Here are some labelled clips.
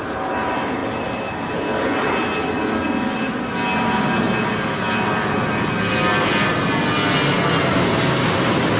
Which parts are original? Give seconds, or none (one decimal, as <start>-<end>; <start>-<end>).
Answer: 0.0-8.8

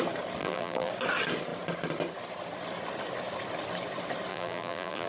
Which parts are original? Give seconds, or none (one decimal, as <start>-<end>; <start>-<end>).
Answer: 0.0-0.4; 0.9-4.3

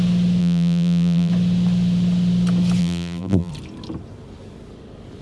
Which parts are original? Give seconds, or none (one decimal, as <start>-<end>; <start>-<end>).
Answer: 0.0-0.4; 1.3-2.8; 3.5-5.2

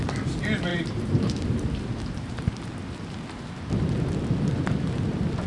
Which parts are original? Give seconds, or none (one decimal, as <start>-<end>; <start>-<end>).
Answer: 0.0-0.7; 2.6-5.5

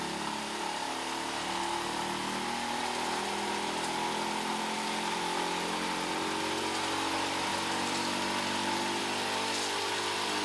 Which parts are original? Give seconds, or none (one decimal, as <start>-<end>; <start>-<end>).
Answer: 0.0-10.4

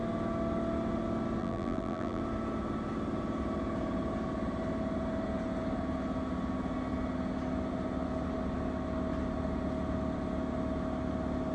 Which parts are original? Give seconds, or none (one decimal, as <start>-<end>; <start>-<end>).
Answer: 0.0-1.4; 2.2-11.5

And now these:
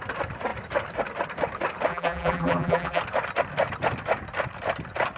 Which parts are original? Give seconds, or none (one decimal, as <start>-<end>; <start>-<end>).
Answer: 0.0-1.9; 3.0-5.2

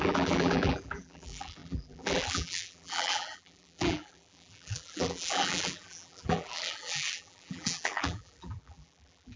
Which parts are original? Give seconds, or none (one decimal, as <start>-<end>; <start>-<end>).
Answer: none